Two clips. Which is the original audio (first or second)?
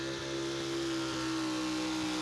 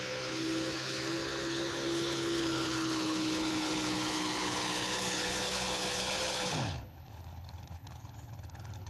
first